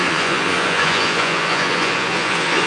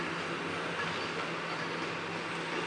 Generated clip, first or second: first